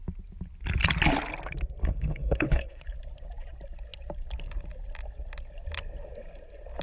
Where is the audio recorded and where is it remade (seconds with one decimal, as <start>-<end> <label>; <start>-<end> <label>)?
0.0-1.8 recorded; 1.8-2.8 remade; 2.8-6.8 recorded